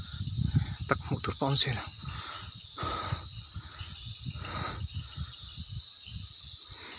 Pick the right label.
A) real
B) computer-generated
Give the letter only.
A